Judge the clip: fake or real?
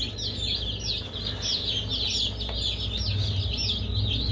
real